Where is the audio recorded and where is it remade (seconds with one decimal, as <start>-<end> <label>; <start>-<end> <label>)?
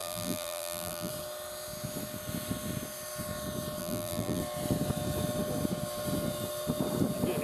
0.0-1.1 remade; 1.1-3.8 recorded; 3.8-4.4 remade; 4.4-7.4 recorded